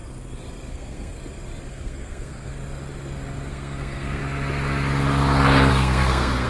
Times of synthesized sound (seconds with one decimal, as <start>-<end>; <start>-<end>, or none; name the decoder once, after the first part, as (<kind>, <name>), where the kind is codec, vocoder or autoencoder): 0.7-1.1 (codec, SNAC); 1.7-2.5; 3.5-4.2; 5.7-6.5